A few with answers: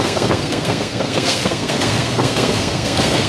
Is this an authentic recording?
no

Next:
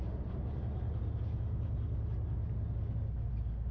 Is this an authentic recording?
yes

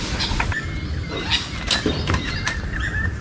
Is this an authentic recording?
yes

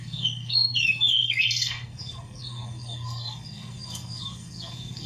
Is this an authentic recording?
no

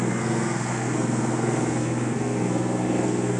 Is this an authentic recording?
no